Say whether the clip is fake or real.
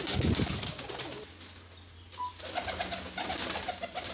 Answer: real